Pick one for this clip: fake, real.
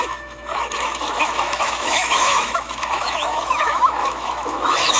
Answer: fake